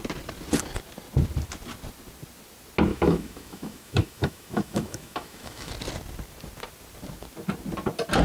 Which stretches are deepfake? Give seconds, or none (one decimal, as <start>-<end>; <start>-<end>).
2.9-5.7